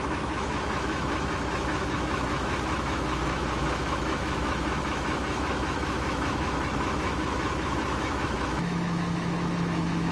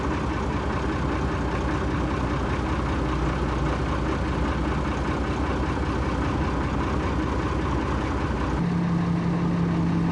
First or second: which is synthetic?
first